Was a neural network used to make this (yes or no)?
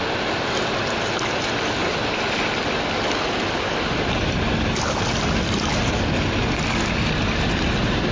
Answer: no